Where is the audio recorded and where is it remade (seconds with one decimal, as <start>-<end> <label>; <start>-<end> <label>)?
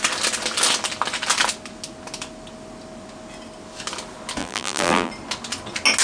0.0-4.4 recorded; 4.4-5.1 remade; 5.1-6.0 recorded